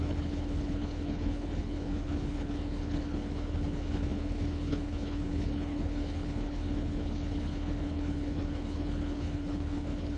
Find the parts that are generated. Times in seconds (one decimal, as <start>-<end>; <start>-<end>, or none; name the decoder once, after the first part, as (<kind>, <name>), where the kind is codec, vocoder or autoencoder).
0.0-10.2 (codec, HILCodec)